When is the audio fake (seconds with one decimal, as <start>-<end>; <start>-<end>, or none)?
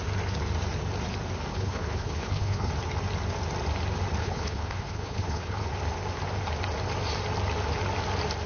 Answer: 1.5-2.7; 4.2-5.7